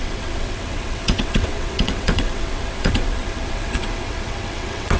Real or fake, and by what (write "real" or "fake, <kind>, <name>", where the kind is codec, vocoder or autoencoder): fake, vocoder, WaveNeXt